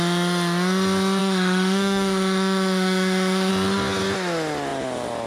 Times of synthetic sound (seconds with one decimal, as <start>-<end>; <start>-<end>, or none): 1.2-3.5